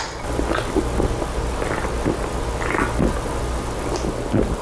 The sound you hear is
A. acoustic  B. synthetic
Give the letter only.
A